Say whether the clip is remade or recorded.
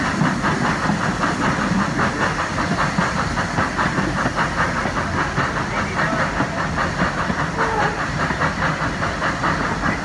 recorded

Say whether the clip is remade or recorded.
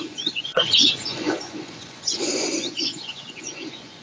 remade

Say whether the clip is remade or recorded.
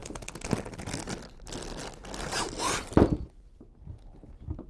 recorded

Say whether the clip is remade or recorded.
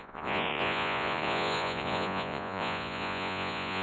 remade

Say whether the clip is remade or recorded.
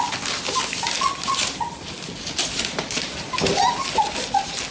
recorded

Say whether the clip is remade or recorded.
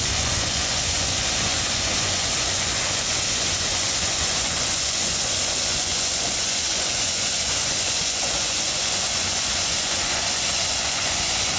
remade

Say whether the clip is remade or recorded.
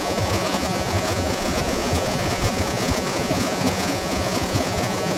remade